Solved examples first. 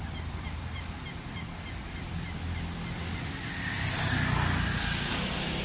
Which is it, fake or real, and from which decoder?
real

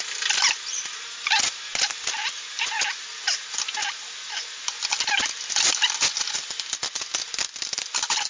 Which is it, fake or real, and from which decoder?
real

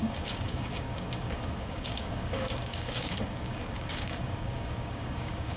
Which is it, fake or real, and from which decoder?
fake, codec, DAC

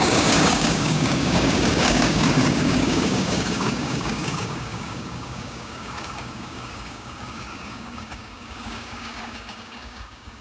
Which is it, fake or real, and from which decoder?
fake, codec, DAC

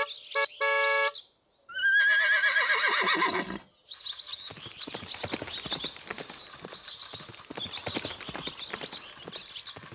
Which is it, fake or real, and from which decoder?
real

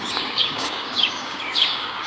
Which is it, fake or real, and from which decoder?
fake, codec, DAC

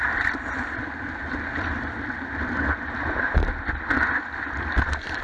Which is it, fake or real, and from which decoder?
real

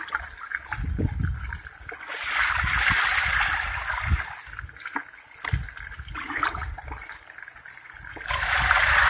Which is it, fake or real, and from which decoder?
real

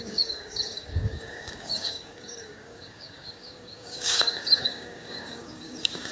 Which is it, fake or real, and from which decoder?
fake, codec, DAC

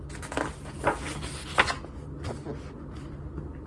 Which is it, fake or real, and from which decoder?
real